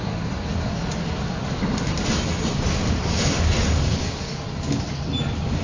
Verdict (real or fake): real